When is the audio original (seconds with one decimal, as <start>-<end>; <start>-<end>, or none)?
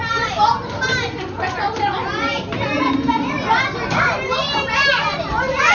0.0-5.7